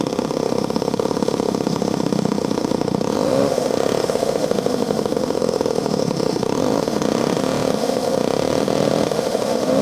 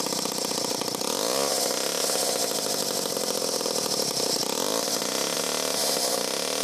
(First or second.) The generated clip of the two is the first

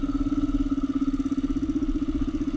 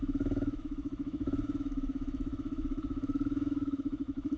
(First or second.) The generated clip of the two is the second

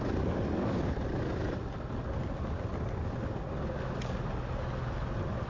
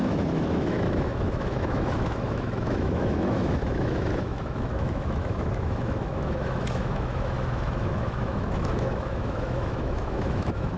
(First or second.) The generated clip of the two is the second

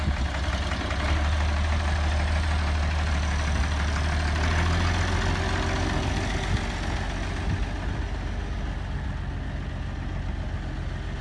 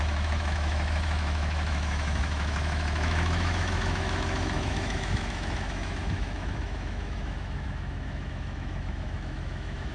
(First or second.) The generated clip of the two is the second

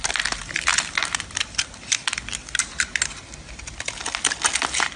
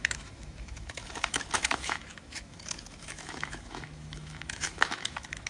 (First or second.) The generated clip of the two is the second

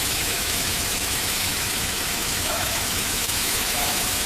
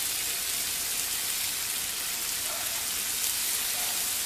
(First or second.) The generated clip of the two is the first